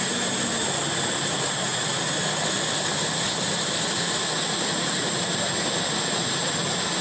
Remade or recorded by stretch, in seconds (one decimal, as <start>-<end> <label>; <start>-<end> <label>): 0.0-7.0 recorded